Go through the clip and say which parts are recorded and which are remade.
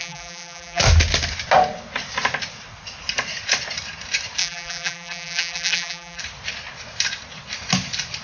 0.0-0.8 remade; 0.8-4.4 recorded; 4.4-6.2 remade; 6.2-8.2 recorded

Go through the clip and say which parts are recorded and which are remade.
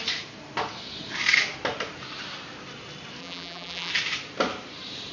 0.0-3.2 recorded; 3.2-3.9 remade; 3.9-5.1 recorded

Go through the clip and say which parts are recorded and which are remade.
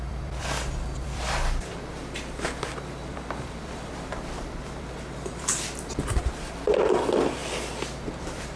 0.0-1.7 remade; 1.7-3.1 recorded; 3.1-7.4 remade; 7.4-8.1 recorded; 8.1-8.6 remade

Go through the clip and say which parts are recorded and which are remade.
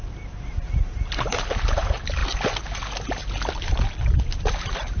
0.0-2.2 remade; 2.2-4.6 recorded; 4.6-5.0 remade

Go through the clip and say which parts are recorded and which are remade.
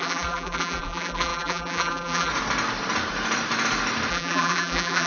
0.0-2.3 remade; 2.3-4.1 recorded; 4.1-5.1 remade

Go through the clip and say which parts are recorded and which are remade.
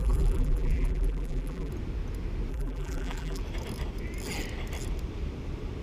0.0-1.7 remade; 1.7-2.5 recorded; 2.5-3.4 remade; 3.4-5.8 recorded